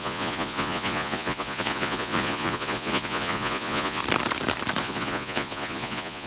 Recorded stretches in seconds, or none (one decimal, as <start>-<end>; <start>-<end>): 4.0-4.8